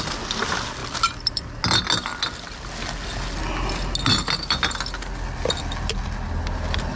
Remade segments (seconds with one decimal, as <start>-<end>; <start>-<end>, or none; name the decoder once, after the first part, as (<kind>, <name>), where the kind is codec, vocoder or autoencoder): none